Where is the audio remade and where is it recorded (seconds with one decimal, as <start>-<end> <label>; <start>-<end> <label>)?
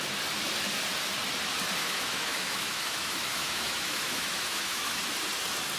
0.0-1.8 recorded; 1.8-5.0 remade; 5.0-5.8 recorded